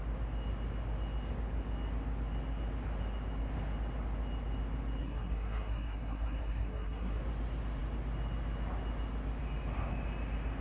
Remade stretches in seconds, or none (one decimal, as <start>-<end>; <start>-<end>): 5.0-7.2